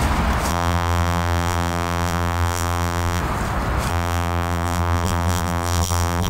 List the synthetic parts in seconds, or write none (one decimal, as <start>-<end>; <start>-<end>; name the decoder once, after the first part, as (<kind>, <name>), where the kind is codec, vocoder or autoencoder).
0.5-3.2 (vocoder, BigVGAN v2); 3.9-6.3

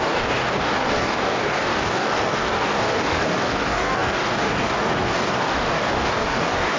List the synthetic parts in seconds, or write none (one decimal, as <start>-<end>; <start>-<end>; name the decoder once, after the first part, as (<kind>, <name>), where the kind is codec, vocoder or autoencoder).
0.0-6.8 (codec, DAC)